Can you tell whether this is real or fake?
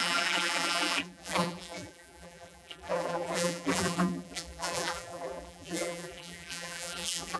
fake